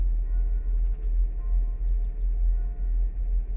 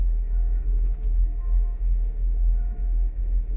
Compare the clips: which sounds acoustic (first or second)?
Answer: first